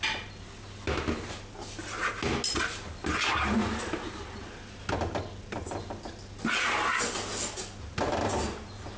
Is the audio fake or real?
real